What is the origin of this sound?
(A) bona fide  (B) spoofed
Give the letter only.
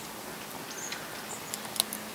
A